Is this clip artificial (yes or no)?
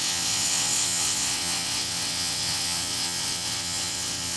yes